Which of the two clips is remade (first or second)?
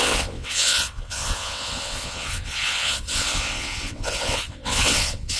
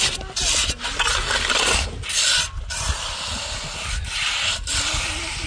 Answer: first